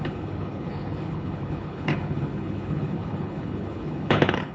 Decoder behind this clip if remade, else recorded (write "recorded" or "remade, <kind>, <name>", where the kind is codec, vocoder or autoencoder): remade, codec, HILCodec